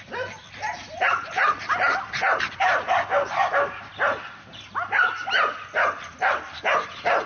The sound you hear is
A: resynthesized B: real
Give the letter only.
B